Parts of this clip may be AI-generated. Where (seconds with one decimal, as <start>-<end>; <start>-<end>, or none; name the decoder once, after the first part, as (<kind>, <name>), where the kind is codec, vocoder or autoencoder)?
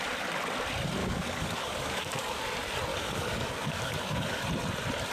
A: 1.0-2.4 (codec, DAC); 2.9-4.4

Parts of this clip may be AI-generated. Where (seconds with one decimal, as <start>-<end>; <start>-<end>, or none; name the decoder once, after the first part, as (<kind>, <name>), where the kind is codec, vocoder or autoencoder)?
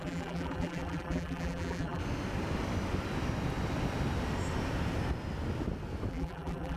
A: 0.0-2.0 (vocoder, BigVGAN v2); 6.1-6.8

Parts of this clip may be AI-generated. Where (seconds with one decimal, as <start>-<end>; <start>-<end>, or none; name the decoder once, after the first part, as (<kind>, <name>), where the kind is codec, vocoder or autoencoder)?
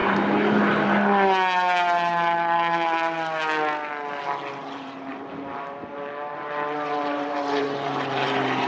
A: 4.5-8.7 (vocoder, BigVGAN v2)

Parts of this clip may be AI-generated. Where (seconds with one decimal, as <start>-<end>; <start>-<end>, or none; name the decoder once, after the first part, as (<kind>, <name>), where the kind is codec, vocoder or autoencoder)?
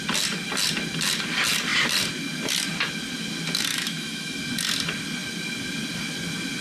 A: 3.7-4.4 (autoencoder, DAC-VAE)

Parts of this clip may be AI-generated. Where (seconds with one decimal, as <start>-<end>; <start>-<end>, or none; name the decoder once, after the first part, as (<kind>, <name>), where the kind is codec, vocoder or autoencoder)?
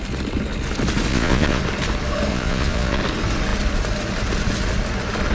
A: 1.1-1.6 (vocoder, Vocos); 2.3-3.0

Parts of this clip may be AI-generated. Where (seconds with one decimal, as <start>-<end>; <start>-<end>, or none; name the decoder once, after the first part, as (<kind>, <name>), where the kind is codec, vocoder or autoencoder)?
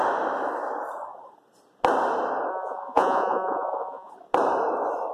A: 2.5-4.1 (vocoder, Vocos)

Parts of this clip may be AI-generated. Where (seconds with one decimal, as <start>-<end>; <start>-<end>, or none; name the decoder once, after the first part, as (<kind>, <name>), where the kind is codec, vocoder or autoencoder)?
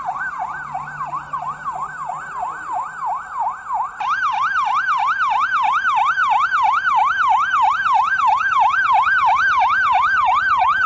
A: none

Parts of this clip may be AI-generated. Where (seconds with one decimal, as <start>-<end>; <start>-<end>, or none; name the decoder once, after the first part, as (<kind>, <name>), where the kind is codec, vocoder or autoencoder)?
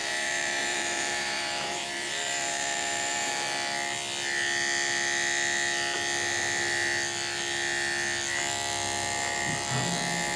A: 0.0-3.3 (vocoder, BigVGAN v2)